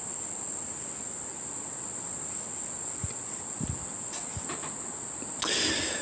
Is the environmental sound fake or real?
real